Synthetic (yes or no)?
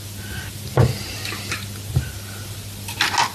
no